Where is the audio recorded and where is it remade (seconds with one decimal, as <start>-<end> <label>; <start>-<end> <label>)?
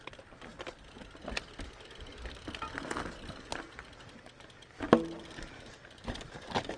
0.0-0.5 recorded; 0.5-1.4 remade; 1.4-6.8 recorded